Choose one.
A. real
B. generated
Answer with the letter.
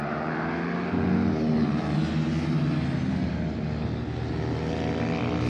A